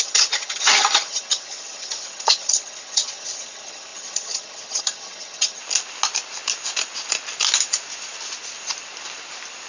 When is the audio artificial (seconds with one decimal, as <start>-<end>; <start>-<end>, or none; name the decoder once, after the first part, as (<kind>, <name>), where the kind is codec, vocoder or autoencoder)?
0.0-5.6 (vocoder, HiFi-GAN)